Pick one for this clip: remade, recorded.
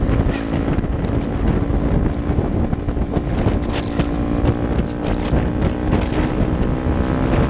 recorded